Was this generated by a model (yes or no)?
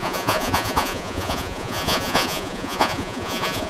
yes